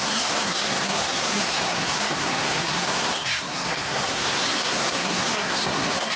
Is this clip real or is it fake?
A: fake